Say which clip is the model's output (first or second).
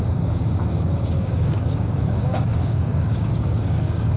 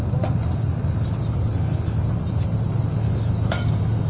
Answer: first